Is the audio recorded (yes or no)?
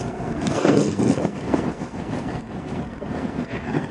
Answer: no